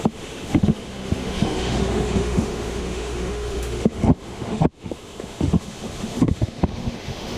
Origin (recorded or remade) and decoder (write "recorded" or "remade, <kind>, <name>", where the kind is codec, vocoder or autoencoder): remade, autoencoder, DAC-VAE